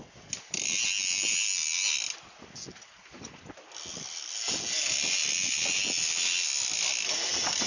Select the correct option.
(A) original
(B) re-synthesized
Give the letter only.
A